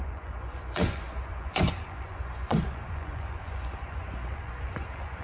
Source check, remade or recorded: remade